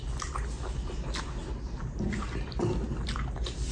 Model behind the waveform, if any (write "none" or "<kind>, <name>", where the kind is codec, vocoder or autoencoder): none